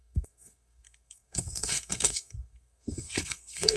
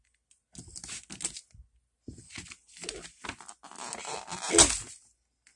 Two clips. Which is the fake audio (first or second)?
first